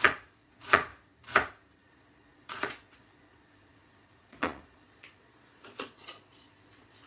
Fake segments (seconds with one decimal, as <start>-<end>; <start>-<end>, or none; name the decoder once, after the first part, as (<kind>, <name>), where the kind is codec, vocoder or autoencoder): 0.0-0.9 (vocoder, Vocos); 1.9-7.1